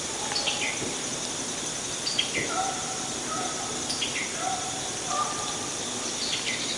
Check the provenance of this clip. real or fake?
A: real